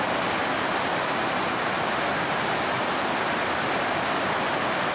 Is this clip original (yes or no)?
yes